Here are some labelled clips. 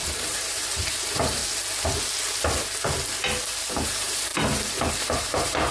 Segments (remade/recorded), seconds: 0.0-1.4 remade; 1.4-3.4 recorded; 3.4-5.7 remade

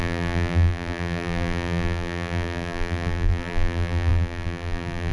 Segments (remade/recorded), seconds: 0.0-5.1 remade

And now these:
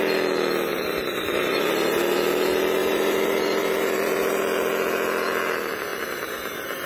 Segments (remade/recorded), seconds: 0.0-0.7 recorded; 0.7-1.6 remade; 1.6-2.8 recorded; 2.8-4.4 remade; 4.4-5.9 recorded; 5.9-6.9 remade

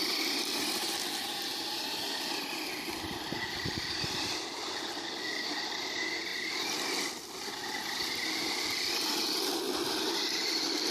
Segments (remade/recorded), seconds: 0.0-10.9 recorded

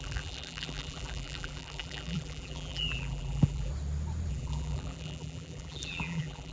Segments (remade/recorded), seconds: 0.0-3.7 remade; 3.7-4.3 recorded; 4.3-6.5 remade

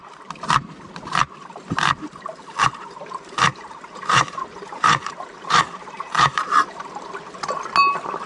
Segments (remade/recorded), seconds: 0.0-2.8 recorded; 2.8-6.8 remade; 6.8-8.3 recorded

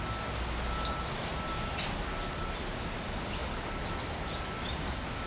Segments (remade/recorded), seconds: 0.0-3.4 recorded; 3.4-3.9 remade; 3.9-5.3 recorded

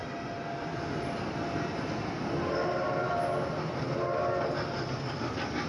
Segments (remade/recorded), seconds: 0.0-5.7 recorded